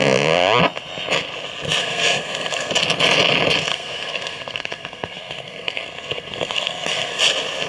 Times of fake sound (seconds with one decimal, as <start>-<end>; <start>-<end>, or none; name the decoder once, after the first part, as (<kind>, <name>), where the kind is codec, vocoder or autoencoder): 1.8-2.7 (codec, SNAC); 3.7-7.2